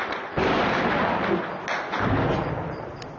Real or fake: real